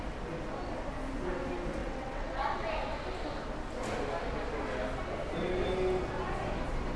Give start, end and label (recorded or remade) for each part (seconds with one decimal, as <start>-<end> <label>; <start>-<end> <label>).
0.0-1.8 recorded; 1.8-2.7 remade; 2.7-7.0 recorded